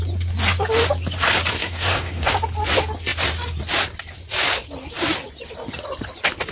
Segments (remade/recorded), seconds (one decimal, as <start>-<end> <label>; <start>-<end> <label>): 0.0-1.5 recorded; 1.5-2.3 remade; 2.3-6.5 recorded